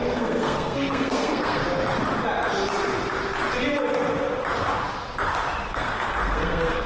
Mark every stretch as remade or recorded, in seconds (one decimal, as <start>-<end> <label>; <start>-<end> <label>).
0.0-1.6 remade; 1.6-5.7 recorded; 5.7-6.9 remade